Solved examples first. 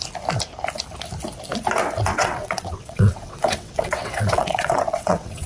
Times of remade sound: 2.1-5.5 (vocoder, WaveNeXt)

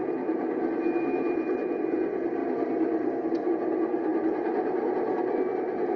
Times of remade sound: none

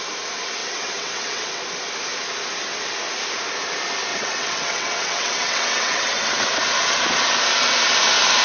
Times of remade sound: 0.6-1.6 (vocoder, WaveNeXt); 4.1-6.5

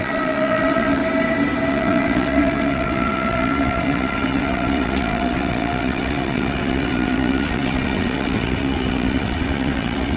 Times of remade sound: 0.0-1.0 (vocoder, WaveNeXt); 1.7-10.2

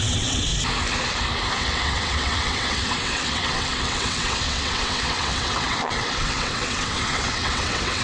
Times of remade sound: 0.0-0.5 (vocoder, WaveNeXt); 1.6-8.0

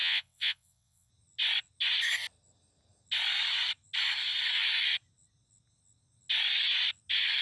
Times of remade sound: 0.0-1.1 (vocoder, WaveNeXt)

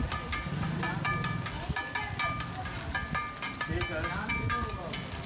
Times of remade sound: none